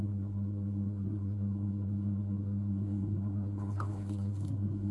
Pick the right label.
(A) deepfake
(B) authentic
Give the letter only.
A